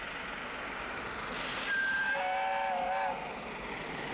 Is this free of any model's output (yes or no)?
yes